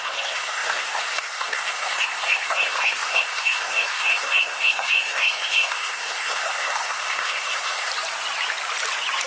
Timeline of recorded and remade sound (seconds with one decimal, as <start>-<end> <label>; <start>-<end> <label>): 0.0-7.9 remade; 7.9-9.3 recorded